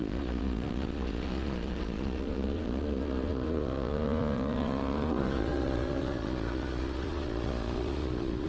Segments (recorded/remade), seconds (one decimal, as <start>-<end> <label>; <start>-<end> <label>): 0.0-8.5 remade